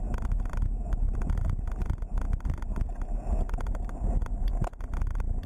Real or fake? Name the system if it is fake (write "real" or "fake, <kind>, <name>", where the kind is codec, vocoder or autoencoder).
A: real